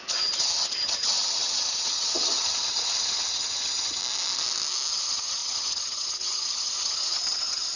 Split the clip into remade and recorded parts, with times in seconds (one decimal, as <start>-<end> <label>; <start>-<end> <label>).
0.0-4.0 remade; 4.0-4.9 recorded; 4.9-7.8 remade